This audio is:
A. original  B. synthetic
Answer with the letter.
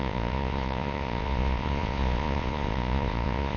B